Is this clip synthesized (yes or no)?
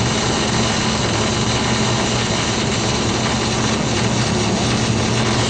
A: no